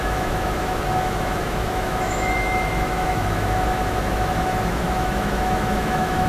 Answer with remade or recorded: remade